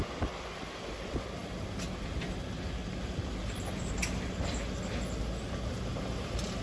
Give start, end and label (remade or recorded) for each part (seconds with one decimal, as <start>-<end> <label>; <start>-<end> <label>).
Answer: 0.0-6.6 recorded